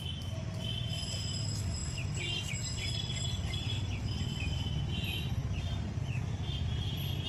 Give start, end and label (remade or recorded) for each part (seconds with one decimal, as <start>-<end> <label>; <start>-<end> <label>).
0.0-7.3 recorded